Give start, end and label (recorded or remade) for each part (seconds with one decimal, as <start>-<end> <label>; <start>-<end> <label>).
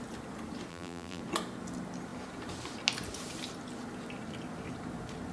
0.0-0.7 recorded; 0.7-1.2 remade; 1.2-5.3 recorded